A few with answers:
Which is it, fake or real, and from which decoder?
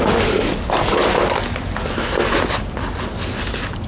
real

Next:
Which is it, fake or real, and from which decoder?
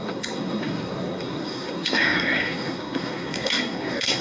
fake, codec, SNAC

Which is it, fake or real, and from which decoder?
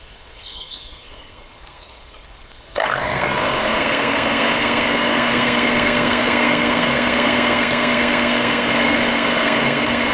fake, codec, SNAC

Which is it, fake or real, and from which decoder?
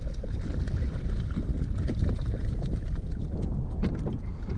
real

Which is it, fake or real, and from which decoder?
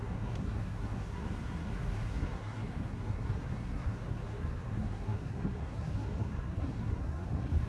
fake, codec, SNAC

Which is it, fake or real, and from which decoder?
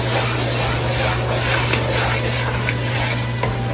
real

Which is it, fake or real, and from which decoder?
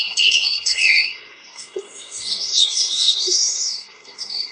fake, codec, SNAC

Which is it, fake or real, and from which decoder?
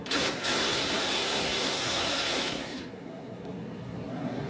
fake, codec, SNAC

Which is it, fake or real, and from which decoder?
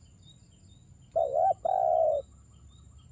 real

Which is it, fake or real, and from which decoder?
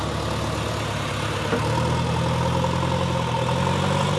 real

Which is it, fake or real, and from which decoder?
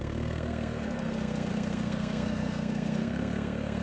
fake, codec, SNAC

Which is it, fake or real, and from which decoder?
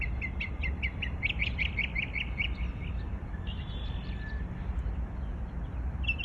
real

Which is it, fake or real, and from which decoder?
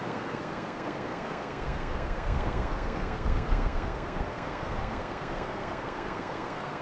fake, codec, SNAC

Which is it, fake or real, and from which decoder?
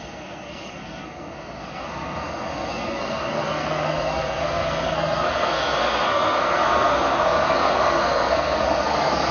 fake, codec, SNAC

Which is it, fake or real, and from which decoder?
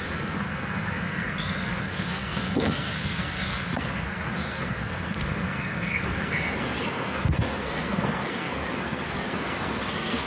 fake, codec, SNAC